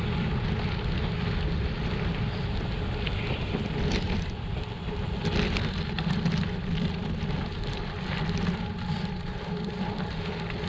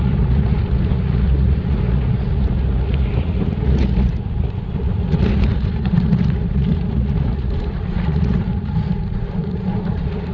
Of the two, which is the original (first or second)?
first